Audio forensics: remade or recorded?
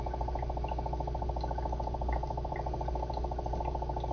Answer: recorded